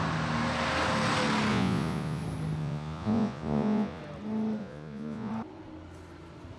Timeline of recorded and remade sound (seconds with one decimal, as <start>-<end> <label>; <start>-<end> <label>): 0.0-1.5 recorded; 1.5-2.2 remade; 2.2-2.6 recorded; 2.6-4.0 remade; 4.0-4.6 recorded; 4.6-5.3 remade; 5.3-6.6 recorded